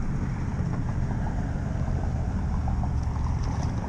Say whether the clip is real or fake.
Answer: fake